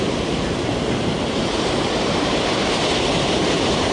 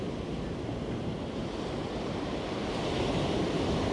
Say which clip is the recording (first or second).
second